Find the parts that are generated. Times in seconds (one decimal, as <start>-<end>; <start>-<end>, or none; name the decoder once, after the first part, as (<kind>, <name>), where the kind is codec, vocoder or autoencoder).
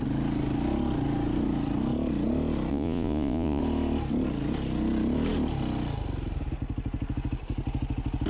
2.7-3.6 (vocoder, Vocos)